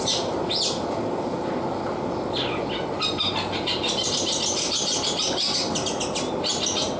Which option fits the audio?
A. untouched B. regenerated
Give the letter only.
A